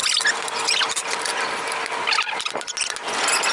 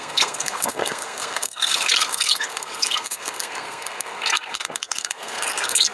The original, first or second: first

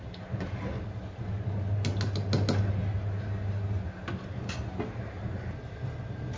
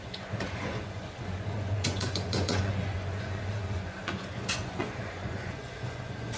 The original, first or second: first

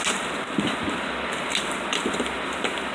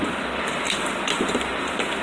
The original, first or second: first